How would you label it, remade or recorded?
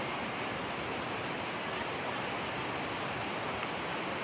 recorded